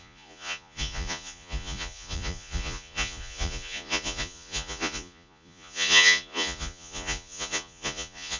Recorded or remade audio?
remade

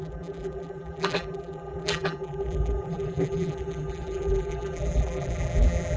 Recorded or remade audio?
remade